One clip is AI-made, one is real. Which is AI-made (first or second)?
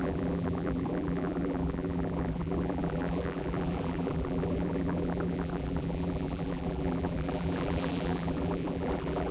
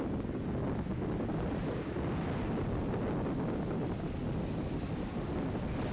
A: first